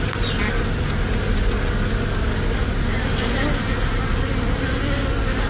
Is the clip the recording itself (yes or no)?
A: yes